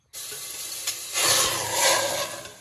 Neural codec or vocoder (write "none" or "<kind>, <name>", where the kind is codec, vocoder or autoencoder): none